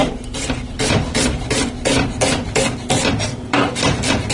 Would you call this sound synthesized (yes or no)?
yes